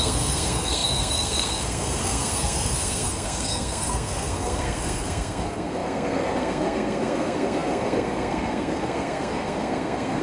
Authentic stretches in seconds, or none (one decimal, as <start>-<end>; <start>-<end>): none